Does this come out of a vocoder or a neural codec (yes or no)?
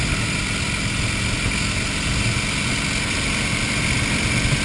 no